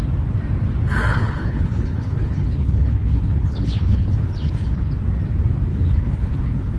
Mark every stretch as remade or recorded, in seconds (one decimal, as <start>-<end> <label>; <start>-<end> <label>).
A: 0.0-1.1 recorded; 1.1-4.9 remade; 4.9-5.7 recorded; 5.7-6.8 remade